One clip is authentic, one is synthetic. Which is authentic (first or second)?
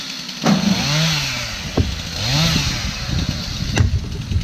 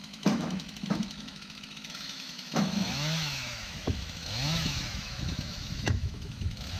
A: first